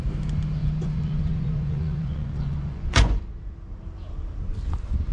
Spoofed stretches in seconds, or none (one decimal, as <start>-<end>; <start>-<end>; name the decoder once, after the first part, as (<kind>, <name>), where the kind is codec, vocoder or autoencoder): 0.6-3.2 (vocoder, Vocos)